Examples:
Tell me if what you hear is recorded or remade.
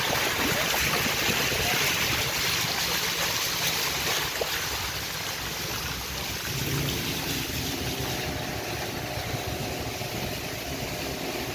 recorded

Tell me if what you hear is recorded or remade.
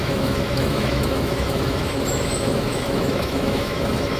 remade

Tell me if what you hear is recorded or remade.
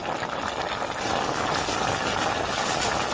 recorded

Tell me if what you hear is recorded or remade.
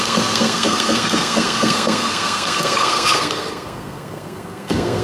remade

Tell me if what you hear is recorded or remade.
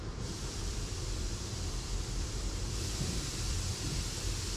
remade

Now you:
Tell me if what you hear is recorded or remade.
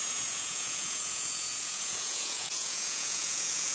remade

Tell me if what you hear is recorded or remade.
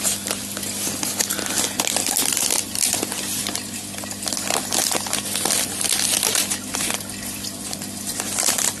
recorded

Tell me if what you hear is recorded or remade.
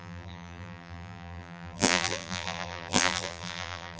remade